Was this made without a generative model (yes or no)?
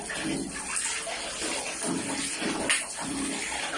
yes